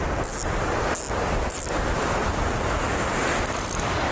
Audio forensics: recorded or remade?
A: recorded